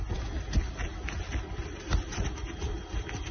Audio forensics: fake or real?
real